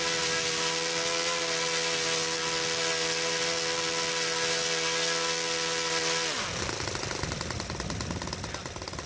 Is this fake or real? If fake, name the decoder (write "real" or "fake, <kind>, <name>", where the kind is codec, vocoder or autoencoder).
real